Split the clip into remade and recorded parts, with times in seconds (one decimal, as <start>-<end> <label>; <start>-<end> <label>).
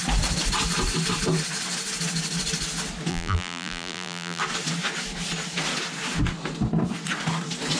0.0-3.1 recorded; 3.1-4.4 remade; 4.4-7.8 recorded